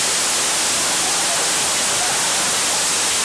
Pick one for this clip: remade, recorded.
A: recorded